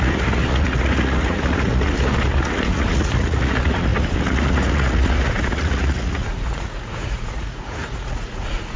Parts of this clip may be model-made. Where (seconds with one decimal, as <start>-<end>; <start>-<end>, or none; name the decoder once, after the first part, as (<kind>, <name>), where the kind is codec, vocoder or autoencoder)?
0.0-8.8 (vocoder, Vocos)